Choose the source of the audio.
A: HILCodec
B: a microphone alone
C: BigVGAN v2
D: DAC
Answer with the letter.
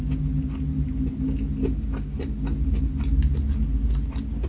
B